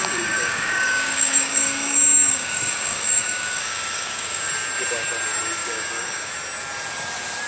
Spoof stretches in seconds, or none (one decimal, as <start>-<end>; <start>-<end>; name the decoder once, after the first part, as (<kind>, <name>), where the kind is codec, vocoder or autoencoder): 0.0-4.5 (codec, DAC); 5.6-6.3